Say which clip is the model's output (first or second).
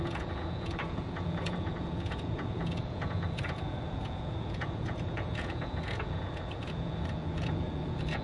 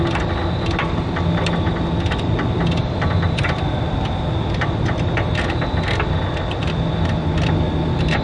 first